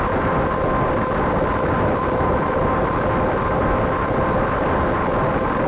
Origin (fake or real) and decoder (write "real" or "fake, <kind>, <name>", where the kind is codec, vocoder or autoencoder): real